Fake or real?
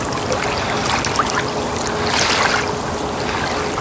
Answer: real